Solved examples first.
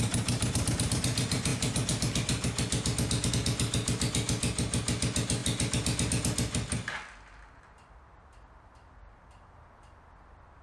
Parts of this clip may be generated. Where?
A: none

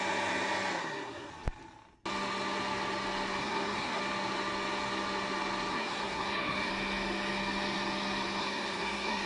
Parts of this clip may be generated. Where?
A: 0.8-1.3 (codec, SNAC); 3.4-4.0; 5.7-6.7; 8.4-9.3

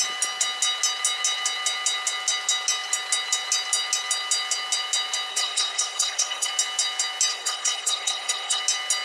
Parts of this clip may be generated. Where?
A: 5.3-6.5 (codec, SNAC); 7.3-8.6

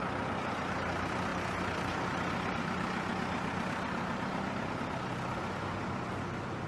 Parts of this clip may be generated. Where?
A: none

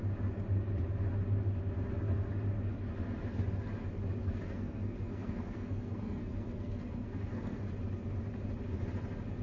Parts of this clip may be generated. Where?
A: 4.2-7.6 (codec, SNAC)

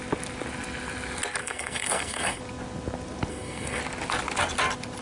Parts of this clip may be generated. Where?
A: 1.4-2.4 (codec, SNAC); 3.3-3.8